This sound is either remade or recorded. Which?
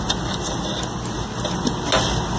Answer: recorded